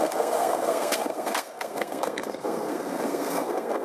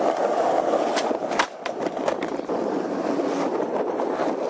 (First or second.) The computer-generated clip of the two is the first